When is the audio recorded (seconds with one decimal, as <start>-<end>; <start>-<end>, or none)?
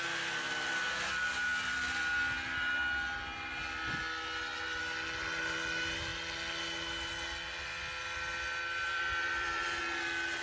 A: 0.0-8.9; 9.8-10.4